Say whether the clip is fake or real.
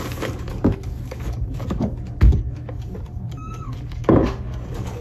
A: fake